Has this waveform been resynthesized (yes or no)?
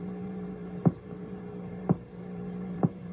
yes